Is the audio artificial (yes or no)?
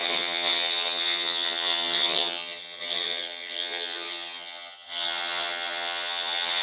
yes